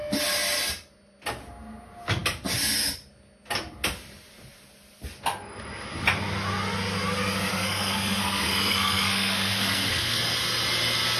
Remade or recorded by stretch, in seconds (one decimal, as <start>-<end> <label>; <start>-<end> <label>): 0.0-7.5 recorded; 7.5-10.2 remade; 10.2-11.2 recorded